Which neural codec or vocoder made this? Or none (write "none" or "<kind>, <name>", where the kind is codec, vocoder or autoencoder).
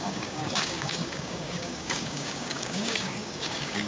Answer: codec, DAC